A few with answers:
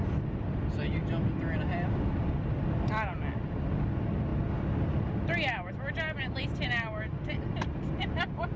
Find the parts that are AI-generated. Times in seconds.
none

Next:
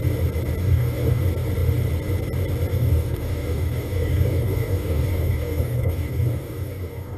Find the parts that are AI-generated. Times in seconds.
0.6-1.2 (codec, DAC); 2.7-7.2

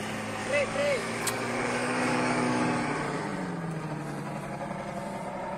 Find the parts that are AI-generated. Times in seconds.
0.4-2.6 (codec, DAC)